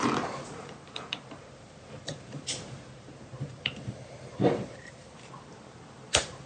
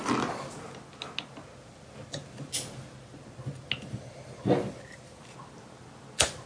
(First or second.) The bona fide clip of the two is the second